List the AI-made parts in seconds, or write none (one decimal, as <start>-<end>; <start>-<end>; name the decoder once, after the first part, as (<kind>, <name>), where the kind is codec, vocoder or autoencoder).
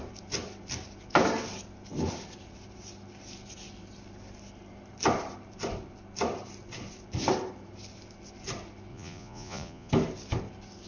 8.9-9.9 (vocoder, Vocos)